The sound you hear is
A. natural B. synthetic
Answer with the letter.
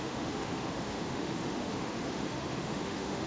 B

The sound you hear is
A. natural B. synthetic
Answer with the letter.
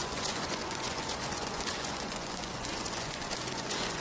B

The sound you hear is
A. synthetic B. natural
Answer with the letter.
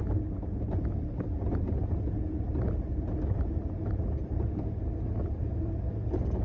B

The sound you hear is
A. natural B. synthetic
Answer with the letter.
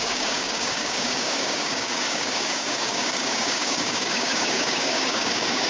B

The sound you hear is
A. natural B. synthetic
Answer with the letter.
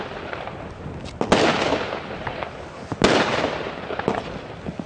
A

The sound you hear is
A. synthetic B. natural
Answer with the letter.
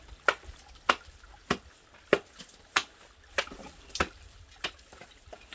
B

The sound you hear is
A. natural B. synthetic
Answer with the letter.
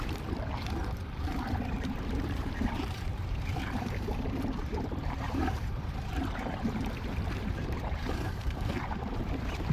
B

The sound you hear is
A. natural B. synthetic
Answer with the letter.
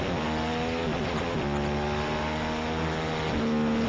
A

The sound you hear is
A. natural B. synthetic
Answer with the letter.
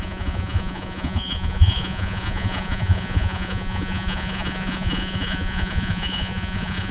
B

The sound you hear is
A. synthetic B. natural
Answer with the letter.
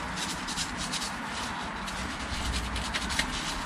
B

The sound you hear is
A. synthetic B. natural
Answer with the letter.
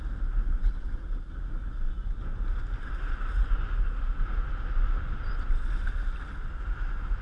B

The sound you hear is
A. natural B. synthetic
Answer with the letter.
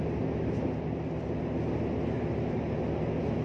A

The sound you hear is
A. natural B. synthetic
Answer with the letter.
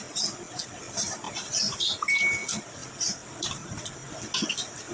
A